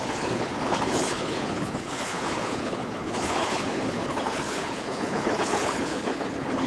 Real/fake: fake